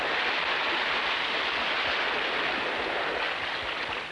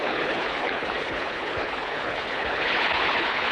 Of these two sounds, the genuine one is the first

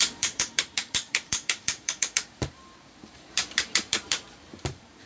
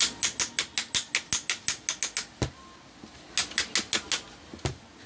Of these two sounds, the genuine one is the second